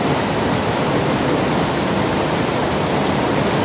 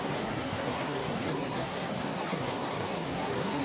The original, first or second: first